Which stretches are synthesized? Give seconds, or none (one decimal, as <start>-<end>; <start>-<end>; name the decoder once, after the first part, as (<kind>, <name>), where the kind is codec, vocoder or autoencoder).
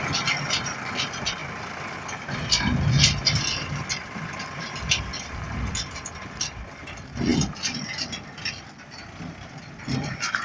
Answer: none